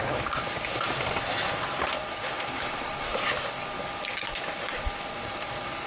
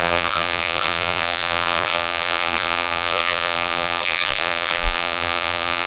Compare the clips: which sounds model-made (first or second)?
second